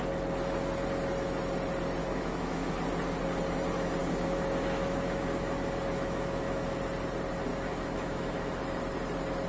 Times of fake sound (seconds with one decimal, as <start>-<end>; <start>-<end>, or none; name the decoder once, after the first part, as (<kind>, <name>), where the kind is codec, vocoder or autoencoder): 2.0-2.7 (autoencoder, DAC-VAE); 4.0-6.8; 7.5-8.6